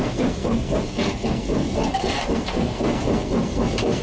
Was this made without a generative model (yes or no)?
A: no